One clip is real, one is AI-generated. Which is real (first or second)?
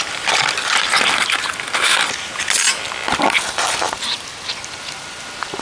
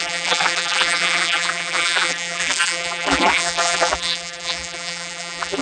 first